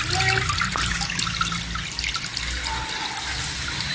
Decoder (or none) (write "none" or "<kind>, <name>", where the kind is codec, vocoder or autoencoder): none